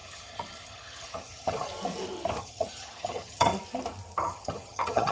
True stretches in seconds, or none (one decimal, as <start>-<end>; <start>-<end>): 1.7-2.4; 3.5-4.2